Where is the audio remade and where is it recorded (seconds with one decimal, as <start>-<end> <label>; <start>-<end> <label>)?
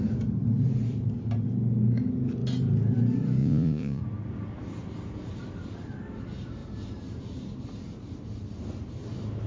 0.0-3.4 recorded; 3.4-4.0 remade; 4.0-9.5 recorded